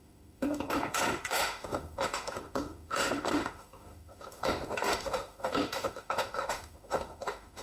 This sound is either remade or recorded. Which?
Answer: remade